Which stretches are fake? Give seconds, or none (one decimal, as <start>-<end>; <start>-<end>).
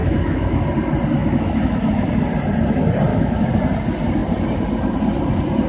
0.0-0.6; 1.2-2.1; 3.1-3.6